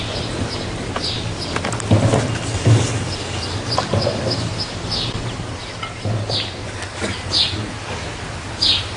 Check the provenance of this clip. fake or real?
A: real